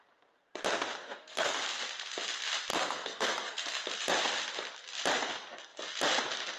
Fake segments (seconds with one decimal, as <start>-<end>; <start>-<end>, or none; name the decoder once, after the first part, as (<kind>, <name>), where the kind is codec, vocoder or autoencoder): 1.1-1.6 (codec, SNAC); 2.7-3.8